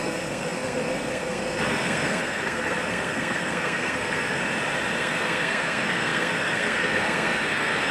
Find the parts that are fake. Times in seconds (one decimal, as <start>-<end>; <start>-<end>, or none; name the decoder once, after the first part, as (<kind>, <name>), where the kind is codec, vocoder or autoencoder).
0.0-4.4 (codec, SNAC); 5.0-7.9